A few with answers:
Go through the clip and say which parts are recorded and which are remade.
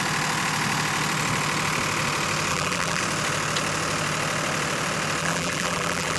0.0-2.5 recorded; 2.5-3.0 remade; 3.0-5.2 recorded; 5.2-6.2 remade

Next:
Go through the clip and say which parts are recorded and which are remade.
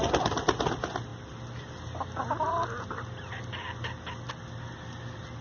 0.0-5.4 recorded